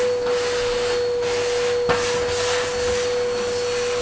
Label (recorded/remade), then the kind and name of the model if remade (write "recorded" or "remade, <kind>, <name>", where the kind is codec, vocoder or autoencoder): recorded